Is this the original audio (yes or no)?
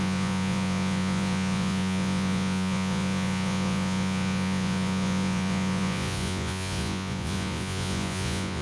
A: no